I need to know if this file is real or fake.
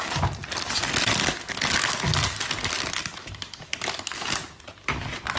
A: real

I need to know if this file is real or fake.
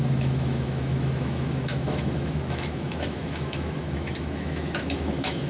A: fake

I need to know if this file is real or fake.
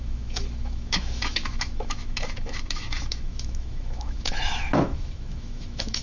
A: fake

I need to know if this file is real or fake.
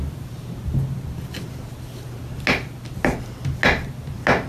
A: real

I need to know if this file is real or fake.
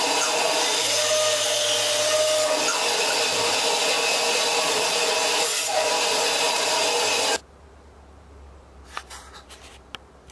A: real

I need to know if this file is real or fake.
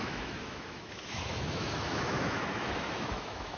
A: fake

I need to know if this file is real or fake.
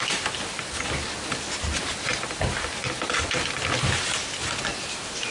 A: real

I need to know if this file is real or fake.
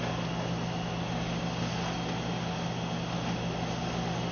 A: real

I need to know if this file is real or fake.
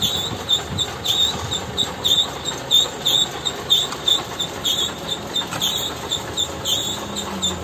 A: real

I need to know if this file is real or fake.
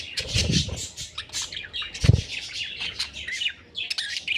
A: real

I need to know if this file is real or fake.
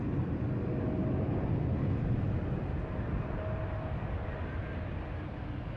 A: real